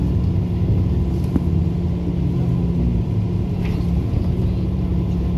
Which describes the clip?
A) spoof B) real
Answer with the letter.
B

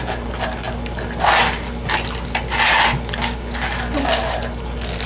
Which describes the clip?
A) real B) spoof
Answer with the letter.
A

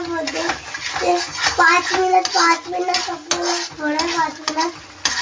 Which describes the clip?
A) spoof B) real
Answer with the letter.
B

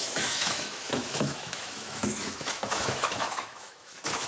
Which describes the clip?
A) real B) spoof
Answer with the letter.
B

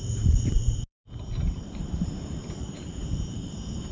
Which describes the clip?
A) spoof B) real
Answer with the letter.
A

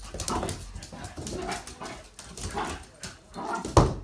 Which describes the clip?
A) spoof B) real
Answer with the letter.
B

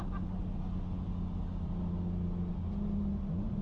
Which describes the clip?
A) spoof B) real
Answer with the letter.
B